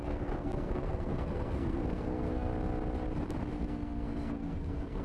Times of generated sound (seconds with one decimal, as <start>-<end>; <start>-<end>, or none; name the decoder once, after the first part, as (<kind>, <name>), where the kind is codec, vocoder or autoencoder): 0.0-2.5 (codec, SNAC); 3.6-5.0